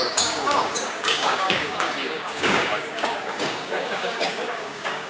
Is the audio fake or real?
fake